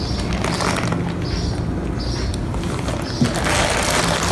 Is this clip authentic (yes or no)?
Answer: yes